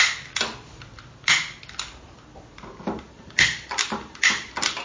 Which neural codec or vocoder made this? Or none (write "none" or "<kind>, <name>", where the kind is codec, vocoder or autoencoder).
none